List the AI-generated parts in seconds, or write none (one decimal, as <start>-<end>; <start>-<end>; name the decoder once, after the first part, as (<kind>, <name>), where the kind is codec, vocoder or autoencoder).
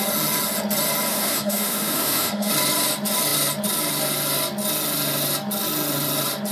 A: 1.1-2.5 (autoencoder, DAC-VAE)